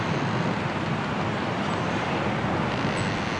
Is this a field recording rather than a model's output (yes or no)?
yes